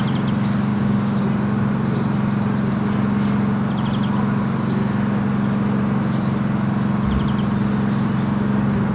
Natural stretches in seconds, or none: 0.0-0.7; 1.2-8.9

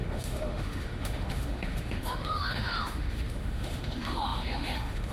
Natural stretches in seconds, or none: none

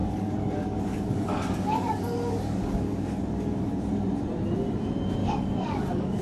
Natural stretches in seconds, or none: 3.7-5.2

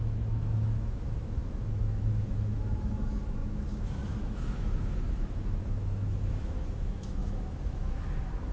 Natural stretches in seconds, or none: none